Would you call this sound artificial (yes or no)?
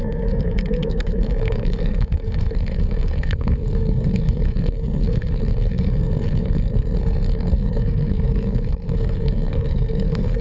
yes